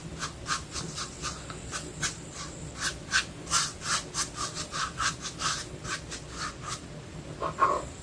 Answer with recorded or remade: recorded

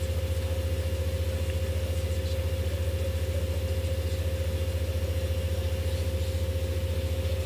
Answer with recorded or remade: recorded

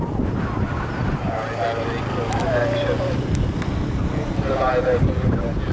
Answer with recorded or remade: recorded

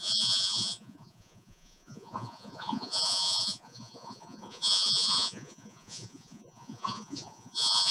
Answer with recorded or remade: remade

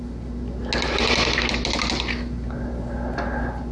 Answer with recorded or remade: recorded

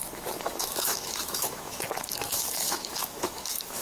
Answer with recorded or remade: remade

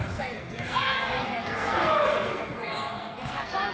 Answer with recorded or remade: remade